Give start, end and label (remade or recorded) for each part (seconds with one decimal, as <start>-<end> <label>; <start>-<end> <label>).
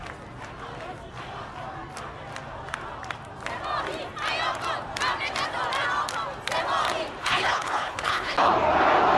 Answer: 0.0-7.2 recorded; 7.2-8.5 remade; 8.5-9.2 recorded